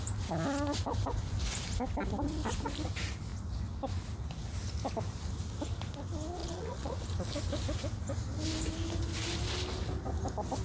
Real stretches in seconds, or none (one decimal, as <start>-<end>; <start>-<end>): 0.0-6.4; 7.0-10.6